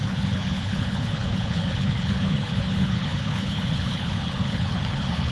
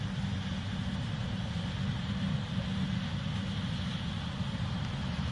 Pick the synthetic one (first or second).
first